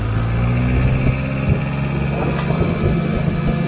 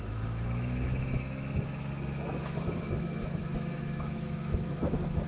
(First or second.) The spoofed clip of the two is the second